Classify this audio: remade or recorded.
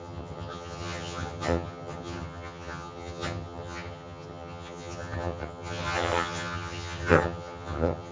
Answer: remade